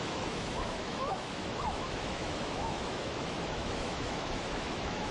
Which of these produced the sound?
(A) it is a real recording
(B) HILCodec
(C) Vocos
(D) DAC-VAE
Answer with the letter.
D